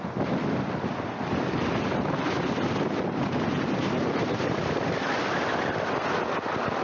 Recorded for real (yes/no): yes